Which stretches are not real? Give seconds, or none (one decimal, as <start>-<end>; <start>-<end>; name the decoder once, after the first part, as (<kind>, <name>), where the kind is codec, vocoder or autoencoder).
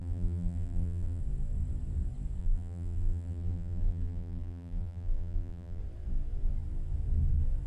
0.0-1.2 (vocoder, BigVGAN v2); 2.4-5.8